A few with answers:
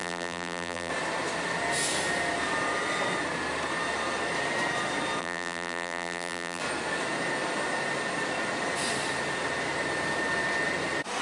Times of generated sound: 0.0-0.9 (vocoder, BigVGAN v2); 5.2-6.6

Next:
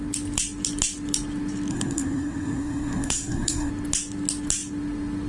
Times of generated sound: 1.7-3.7 (codec, SNAC)

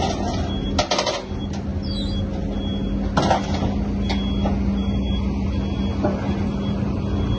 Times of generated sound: none